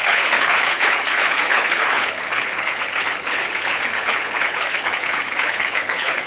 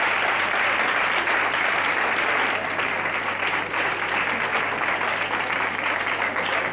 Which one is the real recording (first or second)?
second